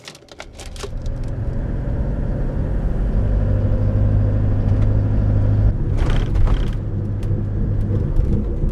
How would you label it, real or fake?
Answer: real